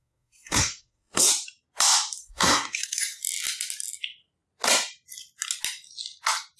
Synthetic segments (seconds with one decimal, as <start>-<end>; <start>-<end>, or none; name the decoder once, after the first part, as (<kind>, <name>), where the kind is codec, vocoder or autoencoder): 0.0-1.3 (codec, SNAC); 2.2-3.2